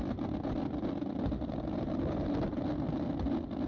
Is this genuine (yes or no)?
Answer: yes